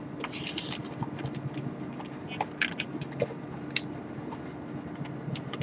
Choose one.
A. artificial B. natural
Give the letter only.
B